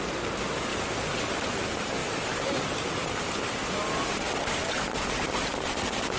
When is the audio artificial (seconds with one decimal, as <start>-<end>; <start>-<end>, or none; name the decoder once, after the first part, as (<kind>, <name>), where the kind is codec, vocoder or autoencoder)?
none